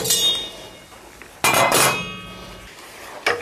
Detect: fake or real real